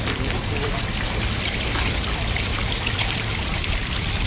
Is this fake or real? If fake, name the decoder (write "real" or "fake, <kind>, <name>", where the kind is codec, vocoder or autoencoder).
fake, vocoder, BigVGAN v2